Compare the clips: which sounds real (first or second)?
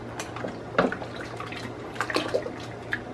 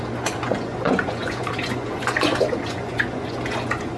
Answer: first